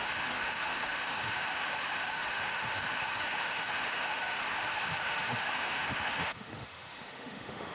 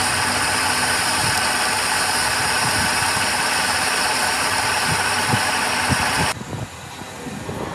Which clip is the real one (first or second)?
second